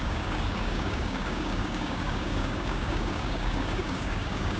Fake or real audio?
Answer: fake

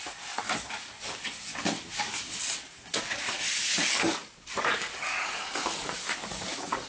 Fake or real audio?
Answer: fake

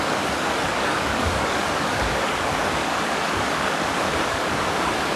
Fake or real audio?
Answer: fake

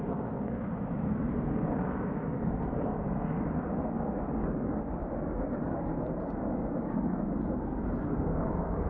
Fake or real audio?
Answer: fake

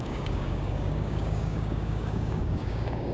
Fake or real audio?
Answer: fake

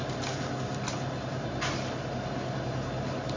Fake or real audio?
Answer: real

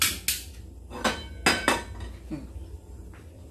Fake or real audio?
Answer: real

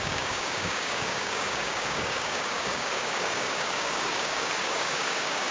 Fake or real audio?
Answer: fake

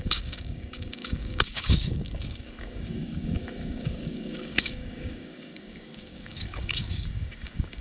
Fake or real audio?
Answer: fake